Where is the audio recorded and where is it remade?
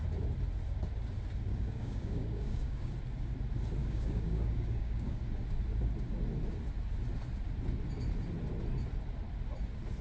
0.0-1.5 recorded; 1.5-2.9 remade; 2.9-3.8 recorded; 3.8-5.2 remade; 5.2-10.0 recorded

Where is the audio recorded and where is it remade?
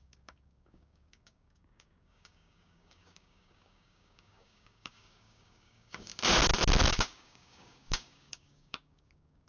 0.0-6.1 remade; 6.1-6.9 recorded; 6.9-9.5 remade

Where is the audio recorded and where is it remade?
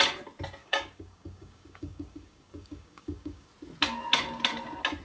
0.0-0.6 recorded; 0.6-3.5 remade; 3.5-5.0 recorded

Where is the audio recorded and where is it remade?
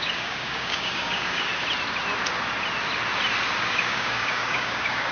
0.0-1.5 remade; 1.5-3.6 recorded; 3.6-5.1 remade